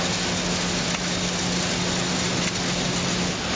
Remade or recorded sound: recorded